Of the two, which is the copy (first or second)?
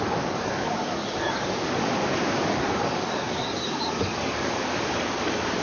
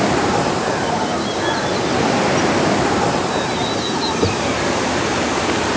first